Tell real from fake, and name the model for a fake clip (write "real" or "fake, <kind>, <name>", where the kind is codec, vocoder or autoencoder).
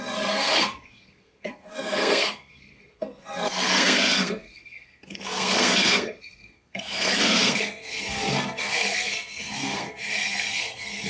fake, codec, SNAC